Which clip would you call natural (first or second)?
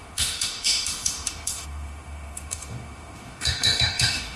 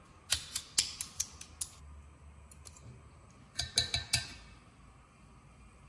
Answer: second